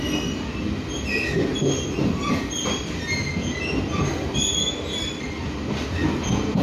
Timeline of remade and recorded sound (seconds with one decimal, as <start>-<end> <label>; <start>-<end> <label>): 0.0-6.6 recorded